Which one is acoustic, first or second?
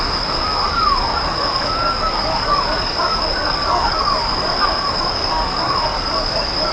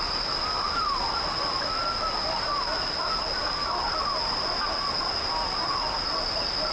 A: second